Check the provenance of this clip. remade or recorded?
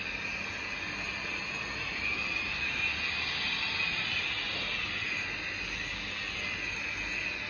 recorded